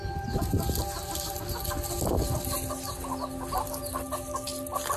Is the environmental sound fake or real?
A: real